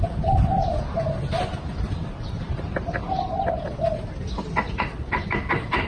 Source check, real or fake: real